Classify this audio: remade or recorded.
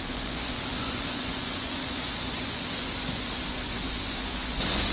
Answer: remade